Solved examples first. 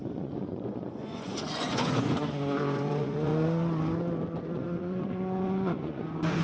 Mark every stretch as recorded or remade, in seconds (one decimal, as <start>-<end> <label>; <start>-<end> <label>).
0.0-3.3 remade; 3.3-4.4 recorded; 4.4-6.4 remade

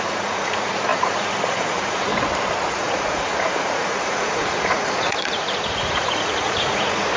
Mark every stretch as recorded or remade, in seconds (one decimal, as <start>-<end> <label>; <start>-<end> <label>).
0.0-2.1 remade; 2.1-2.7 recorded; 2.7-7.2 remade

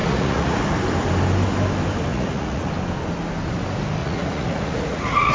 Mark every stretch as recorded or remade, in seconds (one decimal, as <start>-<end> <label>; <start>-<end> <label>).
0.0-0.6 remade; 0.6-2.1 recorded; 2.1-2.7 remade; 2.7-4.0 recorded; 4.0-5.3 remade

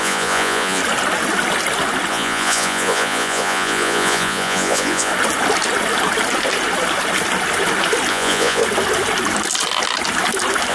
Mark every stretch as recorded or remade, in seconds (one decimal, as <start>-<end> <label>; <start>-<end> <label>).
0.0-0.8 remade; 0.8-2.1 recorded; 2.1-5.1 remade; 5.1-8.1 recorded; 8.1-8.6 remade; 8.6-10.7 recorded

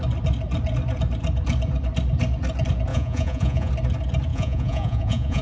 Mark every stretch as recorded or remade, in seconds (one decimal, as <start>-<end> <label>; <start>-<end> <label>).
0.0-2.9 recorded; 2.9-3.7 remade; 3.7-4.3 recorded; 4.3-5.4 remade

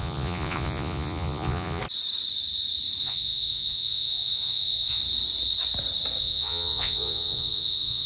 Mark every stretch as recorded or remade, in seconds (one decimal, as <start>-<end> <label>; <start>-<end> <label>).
0.0-1.8 remade; 1.8-3.0 recorded; 3.0-5.0 remade; 5.0-6.2 recorded; 6.2-8.1 remade

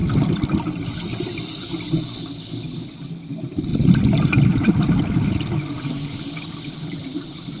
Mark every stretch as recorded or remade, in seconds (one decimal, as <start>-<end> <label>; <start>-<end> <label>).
0.0-7.6 recorded